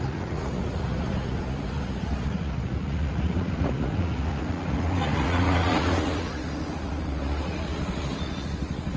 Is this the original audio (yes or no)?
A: no